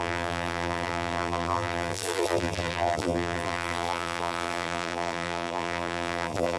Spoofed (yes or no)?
yes